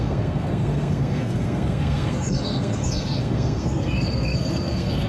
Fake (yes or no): yes